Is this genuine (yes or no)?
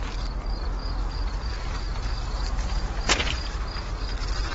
yes